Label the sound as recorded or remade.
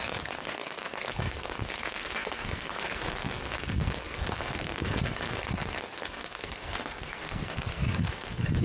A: remade